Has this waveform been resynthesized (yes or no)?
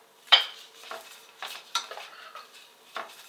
yes